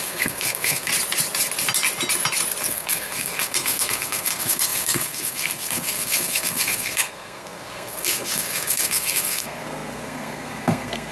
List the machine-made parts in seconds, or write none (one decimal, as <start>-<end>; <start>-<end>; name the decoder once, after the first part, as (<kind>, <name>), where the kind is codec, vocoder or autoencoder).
0.0-0.9 (codec, SNAC); 2.6-11.1